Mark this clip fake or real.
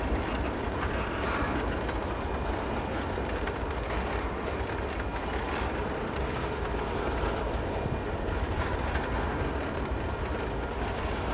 real